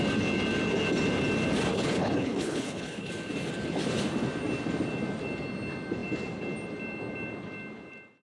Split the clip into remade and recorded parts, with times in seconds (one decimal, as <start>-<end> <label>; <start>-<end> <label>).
0.0-1.7 recorded; 1.7-3.1 remade; 3.1-8.3 recorded

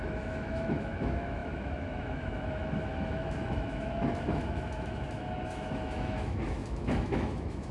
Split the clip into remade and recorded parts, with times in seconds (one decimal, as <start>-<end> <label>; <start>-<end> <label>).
0.0-7.7 remade

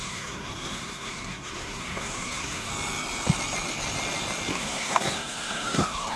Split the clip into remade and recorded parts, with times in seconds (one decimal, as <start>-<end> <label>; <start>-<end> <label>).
0.0-2.7 remade; 2.7-4.5 recorded; 4.5-6.2 remade

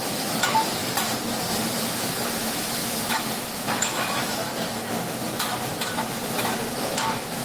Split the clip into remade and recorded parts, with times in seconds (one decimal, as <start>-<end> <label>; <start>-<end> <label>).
0.0-0.8 remade; 0.8-1.7 recorded; 1.7-7.4 remade

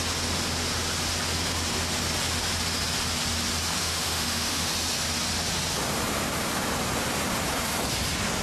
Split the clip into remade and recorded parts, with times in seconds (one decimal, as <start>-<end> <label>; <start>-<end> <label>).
0.0-3.8 recorded; 3.8-4.7 remade; 4.7-8.4 recorded

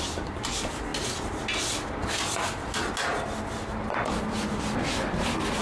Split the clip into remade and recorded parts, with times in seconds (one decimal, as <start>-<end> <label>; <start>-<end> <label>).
0.0-5.6 recorded

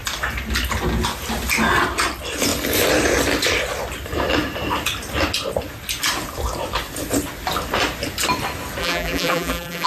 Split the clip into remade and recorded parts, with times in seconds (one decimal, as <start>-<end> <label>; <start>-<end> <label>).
0.0-8.8 recorded; 8.8-9.9 remade